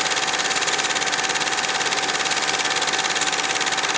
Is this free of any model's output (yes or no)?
yes